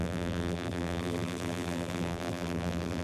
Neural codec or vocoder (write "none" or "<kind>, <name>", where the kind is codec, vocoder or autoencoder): vocoder, BigVGAN v2